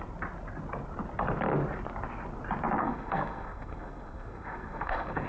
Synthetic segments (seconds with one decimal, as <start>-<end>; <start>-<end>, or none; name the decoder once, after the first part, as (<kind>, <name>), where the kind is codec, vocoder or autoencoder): 2.8-5.3 (codec, SNAC)